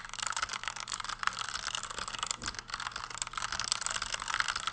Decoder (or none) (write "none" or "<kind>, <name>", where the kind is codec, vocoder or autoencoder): none